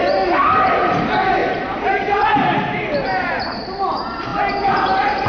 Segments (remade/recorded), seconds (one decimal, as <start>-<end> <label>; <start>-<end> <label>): 0.0-1.4 recorded; 1.4-2.2 remade; 2.2-4.3 recorded; 4.3-4.8 remade; 4.8-5.3 recorded